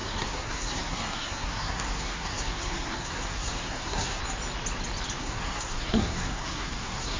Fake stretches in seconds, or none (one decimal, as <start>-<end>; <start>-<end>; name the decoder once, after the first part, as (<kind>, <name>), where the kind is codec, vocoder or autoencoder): 0.0-4.2 (codec, SNAC); 5.2-7.2